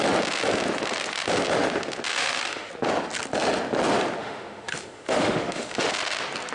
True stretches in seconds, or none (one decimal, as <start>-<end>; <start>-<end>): 0.0-2.1; 2.7-4.2; 5.9-6.5